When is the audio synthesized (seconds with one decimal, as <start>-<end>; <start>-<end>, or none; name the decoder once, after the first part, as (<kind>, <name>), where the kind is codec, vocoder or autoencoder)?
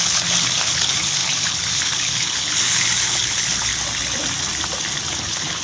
0.0-3.7 (codec, HILCodec); 5.1-5.6